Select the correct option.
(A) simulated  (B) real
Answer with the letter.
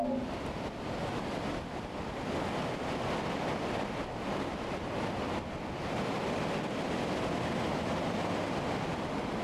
B